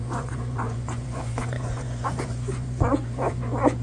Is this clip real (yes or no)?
no